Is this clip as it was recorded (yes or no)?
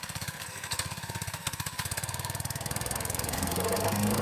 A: no